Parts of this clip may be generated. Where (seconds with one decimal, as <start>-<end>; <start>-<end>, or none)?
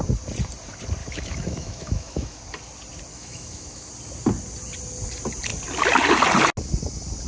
1.0-2.4; 3.1-3.9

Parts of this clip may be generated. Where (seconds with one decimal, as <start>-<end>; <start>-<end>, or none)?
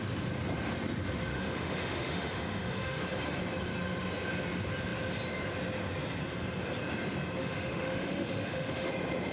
1.3-3.0; 7.4-8.9